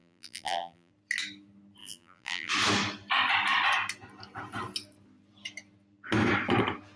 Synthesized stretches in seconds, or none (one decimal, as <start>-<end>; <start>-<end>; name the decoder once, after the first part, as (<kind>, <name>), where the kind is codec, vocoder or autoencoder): 0.0-0.9 (vocoder, BigVGAN v2); 1.8-2.5